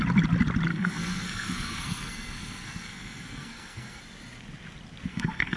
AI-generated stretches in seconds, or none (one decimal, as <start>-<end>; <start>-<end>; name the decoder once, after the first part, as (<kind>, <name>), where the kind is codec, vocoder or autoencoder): 0.7-4.0 (codec, SNAC); 5.1-5.6